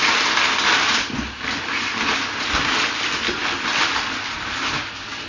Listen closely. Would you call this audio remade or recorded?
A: recorded